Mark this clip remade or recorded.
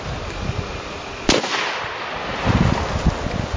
recorded